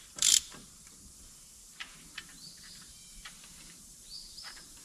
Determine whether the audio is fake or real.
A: fake